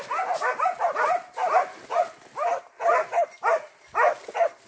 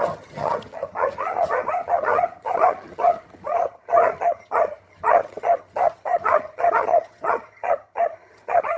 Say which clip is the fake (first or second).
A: second